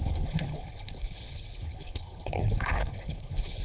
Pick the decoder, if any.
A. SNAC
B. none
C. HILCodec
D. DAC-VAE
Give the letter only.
C